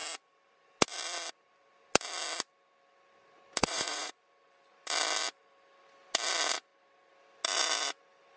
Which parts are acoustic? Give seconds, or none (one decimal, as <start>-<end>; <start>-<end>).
0.0-3.6; 4.1-8.4

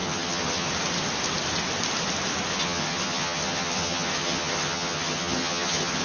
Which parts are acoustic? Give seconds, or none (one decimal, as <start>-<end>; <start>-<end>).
0.7-2.5

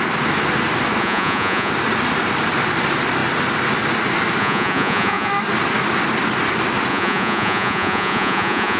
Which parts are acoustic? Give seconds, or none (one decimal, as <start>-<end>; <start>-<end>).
0.0-1.0; 1.7-4.4; 5.3-6.9